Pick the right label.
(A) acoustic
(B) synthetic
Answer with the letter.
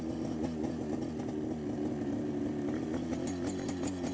A